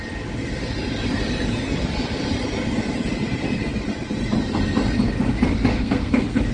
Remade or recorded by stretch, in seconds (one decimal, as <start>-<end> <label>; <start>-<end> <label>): 0.0-5.7 recorded; 5.7-6.5 remade